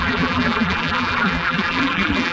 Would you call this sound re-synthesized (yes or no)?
yes